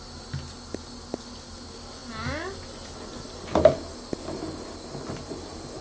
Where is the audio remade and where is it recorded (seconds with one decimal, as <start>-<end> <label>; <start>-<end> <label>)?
0.0-5.8 recorded

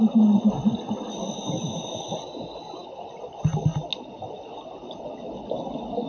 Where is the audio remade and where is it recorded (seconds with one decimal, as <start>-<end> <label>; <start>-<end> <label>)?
0.0-6.1 recorded

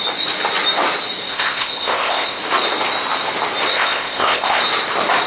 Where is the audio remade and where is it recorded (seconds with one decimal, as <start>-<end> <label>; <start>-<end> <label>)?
0.0-1.3 recorded; 1.3-2.4 remade; 2.4-3.7 recorded; 3.7-4.6 remade; 4.6-5.3 recorded

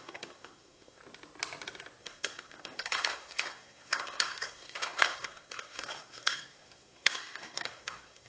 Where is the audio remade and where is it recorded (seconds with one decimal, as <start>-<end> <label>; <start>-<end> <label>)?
0.0-1.0 remade; 1.0-2.0 recorded; 2.0-8.3 remade

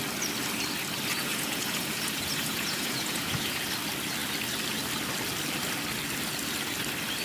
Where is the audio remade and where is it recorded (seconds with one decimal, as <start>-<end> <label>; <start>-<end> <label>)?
0.0-1.1 recorded; 1.1-3.6 remade; 3.6-7.2 recorded